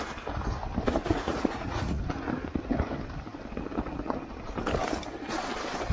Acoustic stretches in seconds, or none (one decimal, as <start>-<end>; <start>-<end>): 0.0-1.0; 2.0-5.9